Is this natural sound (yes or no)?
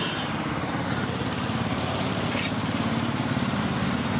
no